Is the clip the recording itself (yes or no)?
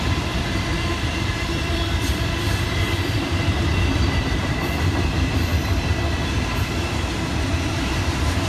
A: no